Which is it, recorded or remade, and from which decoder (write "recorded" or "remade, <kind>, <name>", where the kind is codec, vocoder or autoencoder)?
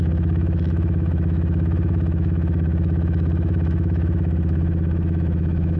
remade, autoencoder, DAC-VAE